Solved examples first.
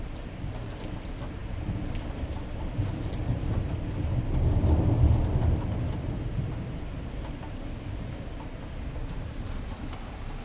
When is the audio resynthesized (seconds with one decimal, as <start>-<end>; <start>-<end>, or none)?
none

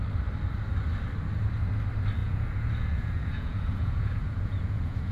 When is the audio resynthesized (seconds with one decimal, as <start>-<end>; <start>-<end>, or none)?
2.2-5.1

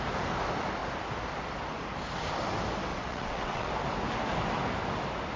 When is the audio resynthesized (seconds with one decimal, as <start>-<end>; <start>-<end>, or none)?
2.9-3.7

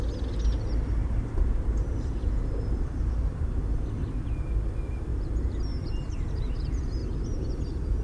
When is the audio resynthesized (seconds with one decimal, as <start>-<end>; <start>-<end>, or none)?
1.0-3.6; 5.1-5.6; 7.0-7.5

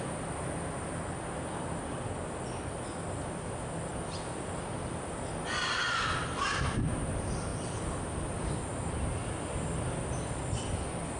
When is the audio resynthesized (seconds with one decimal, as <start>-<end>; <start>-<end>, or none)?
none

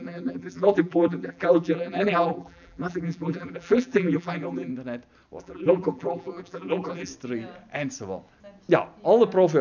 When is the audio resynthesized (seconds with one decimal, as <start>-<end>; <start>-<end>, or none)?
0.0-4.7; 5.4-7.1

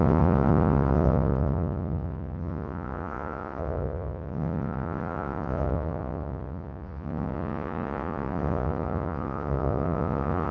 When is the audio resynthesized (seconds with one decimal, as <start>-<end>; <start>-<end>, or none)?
0.0-10.5

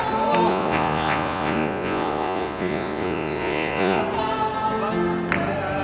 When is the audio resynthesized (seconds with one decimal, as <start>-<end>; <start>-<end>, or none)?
0.5-4.0